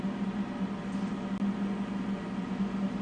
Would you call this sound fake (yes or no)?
no